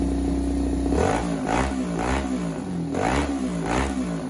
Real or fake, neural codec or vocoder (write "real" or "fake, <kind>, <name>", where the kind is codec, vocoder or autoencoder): real